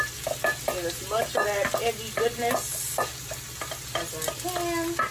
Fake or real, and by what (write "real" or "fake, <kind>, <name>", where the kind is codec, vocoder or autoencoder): real